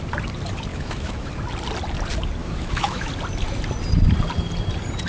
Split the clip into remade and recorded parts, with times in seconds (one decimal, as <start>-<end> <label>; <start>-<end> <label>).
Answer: 0.0-0.7 recorded; 0.7-1.3 remade; 1.3-2.4 recorded; 2.4-3.1 remade; 3.1-5.1 recorded